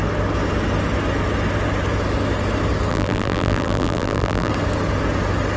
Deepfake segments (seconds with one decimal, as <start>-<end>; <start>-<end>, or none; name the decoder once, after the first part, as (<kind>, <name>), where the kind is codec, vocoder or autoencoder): 2.9-4.5 (vocoder, BigVGAN v2)

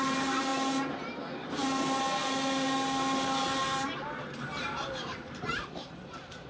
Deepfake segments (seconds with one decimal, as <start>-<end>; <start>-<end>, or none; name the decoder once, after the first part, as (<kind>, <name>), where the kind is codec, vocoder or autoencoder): 0.0-0.5 (vocoder, BigVGAN v2); 4.2-6.5

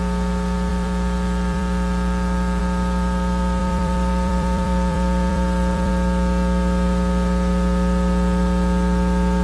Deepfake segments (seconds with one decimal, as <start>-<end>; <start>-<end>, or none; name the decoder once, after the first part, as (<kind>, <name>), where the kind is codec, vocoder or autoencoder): 0.7-2.6 (vocoder, BigVGAN v2); 3.6-5.9

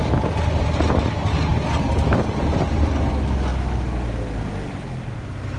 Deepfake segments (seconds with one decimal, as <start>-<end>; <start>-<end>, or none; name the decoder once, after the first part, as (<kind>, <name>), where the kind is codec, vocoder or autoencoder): 1.5-2.2 (vocoder, BigVGAN v2)